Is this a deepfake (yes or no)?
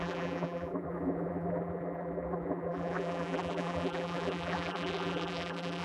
yes